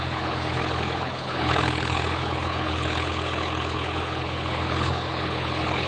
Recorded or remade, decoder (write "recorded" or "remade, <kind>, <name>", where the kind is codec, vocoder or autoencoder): remade, codec, HILCodec